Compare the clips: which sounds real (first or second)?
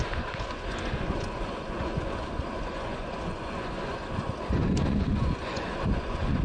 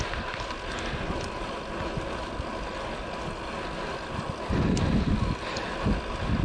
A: second